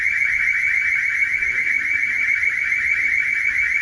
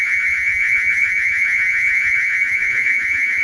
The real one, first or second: first